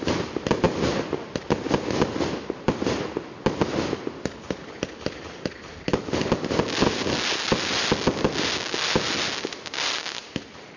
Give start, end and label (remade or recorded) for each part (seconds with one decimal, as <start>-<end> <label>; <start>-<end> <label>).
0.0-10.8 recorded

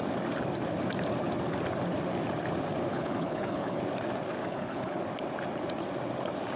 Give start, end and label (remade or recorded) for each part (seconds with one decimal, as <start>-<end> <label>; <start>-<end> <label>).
0.0-2.9 recorded; 2.9-3.8 remade; 3.8-4.4 recorded; 4.4-5.0 remade; 5.0-6.6 recorded

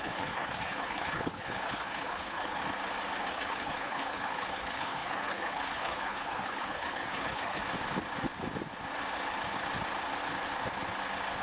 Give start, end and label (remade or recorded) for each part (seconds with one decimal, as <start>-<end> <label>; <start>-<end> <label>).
0.0-2.6 remade; 2.6-3.2 recorded; 3.2-7.6 remade; 7.6-11.4 recorded

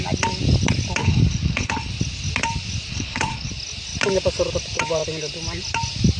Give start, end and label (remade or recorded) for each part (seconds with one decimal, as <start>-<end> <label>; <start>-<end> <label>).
0.0-1.0 recorded; 1.0-1.9 remade; 1.9-2.9 recorded; 2.9-3.5 remade; 3.5-6.2 recorded

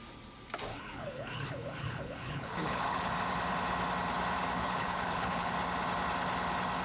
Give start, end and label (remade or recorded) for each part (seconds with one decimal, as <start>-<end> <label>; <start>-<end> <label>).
0.0-0.7 recorded; 0.7-3.1 remade; 3.1-4.6 recorded; 4.6-5.5 remade; 5.5-6.8 recorded

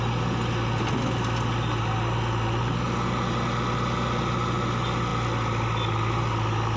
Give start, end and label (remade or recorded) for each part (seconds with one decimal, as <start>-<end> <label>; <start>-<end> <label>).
0.0-6.8 recorded